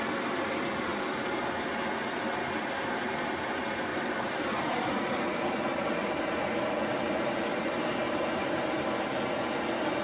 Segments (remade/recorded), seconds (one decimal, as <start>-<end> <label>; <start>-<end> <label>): 0.0-3.9 recorded; 3.9-4.9 remade; 4.9-7.5 recorded; 7.5-8.6 remade; 8.6-10.0 recorded